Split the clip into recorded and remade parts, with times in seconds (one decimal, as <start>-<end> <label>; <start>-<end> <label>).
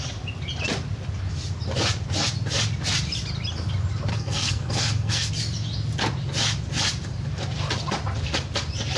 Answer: 0.0-4.1 recorded; 4.1-5.3 remade; 5.3-9.0 recorded